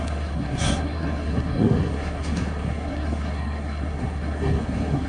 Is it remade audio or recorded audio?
remade